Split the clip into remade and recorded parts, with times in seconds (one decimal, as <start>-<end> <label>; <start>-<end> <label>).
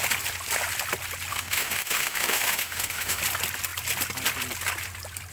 0.0-1.3 recorded; 1.3-3.2 remade; 3.2-5.3 recorded